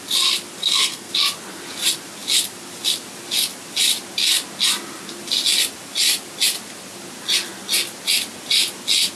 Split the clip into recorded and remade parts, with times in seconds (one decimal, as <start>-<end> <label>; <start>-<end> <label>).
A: 0.0-0.6 recorded; 0.6-1.1 remade; 1.1-9.2 recorded